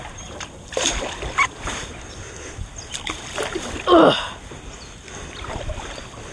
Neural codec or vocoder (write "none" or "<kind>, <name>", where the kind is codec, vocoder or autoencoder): none